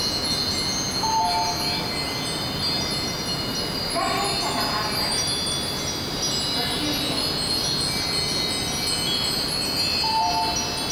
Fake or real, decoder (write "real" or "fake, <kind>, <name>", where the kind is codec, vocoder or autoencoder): real